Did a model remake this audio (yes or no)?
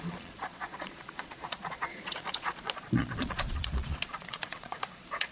yes